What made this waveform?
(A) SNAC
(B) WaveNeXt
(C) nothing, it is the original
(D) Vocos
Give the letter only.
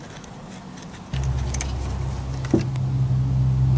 C